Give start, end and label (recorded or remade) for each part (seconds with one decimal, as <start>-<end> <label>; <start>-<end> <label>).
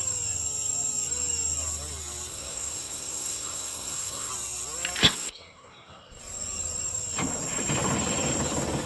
0.0-2.3 recorded; 2.3-4.3 remade; 4.3-5.0 recorded; 5.0-6.2 remade; 6.2-8.9 recorded